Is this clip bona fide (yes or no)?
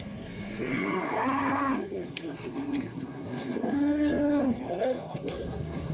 no